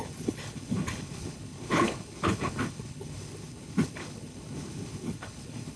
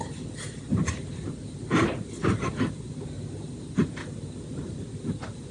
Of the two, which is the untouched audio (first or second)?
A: second